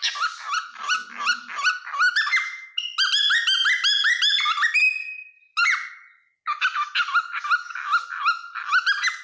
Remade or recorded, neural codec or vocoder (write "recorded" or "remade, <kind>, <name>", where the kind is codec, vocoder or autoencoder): recorded